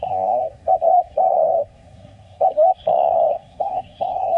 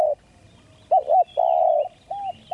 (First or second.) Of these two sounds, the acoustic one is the second